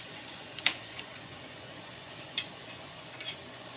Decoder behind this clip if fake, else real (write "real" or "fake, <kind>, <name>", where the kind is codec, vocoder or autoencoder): fake, vocoder, Vocos